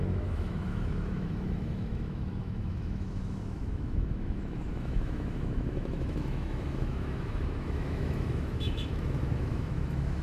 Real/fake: fake